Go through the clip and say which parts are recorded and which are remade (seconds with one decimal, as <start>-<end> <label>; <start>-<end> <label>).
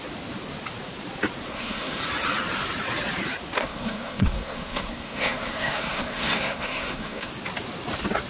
0.0-1.5 recorded; 1.5-2.0 remade; 2.0-3.6 recorded; 3.6-7.3 remade; 7.3-8.3 recorded